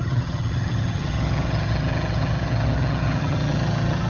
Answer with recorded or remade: remade